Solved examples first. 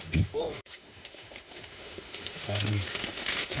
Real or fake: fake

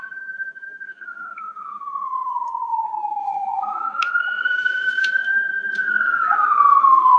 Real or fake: fake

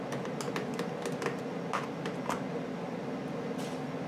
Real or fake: real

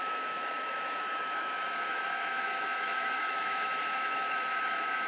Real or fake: fake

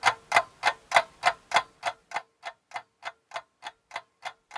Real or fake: real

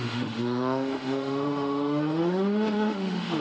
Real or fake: fake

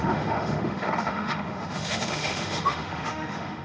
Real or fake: fake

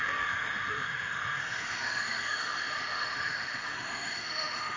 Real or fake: fake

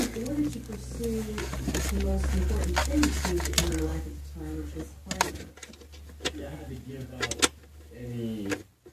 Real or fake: real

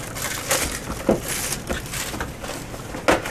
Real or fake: real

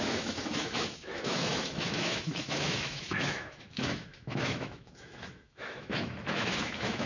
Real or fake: fake